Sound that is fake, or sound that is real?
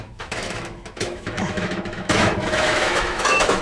fake